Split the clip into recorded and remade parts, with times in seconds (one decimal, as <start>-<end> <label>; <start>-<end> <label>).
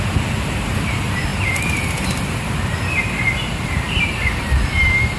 0.0-1.3 remade; 1.3-4.1 recorded; 4.1-5.2 remade